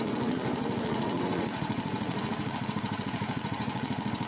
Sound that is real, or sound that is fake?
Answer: fake